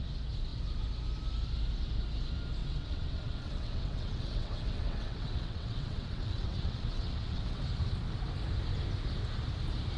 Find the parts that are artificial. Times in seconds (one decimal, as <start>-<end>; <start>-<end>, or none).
2.6-7.6